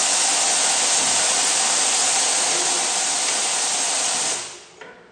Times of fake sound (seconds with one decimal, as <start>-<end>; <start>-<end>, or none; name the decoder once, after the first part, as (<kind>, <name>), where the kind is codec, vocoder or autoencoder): none